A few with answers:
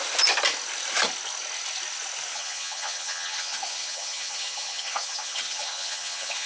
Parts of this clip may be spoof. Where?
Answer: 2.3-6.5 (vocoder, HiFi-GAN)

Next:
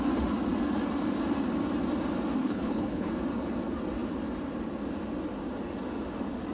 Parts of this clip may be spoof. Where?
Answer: 2.4-3.1 (codec, HILCodec)

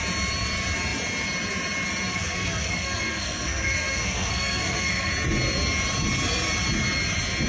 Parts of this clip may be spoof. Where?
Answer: 2.1-5.1 (codec, SNAC)

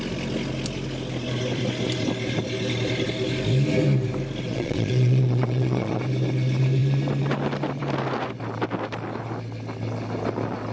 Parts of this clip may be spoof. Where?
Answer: 4.5-6.0 (vocoder, Vocos)

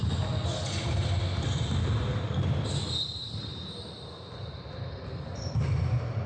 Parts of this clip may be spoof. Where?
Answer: none

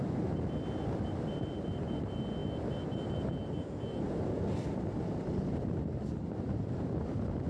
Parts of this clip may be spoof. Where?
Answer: none

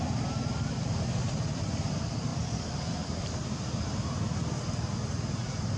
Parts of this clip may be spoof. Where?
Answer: 2.3-4.6 (vocoder, BigVGAN v2)